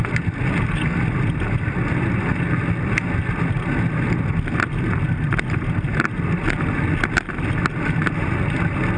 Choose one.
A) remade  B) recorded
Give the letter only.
B